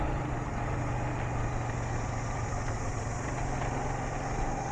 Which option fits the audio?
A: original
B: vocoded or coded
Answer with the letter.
A